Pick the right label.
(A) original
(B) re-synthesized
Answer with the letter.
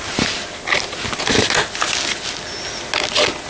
A